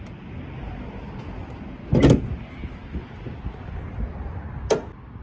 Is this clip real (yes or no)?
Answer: yes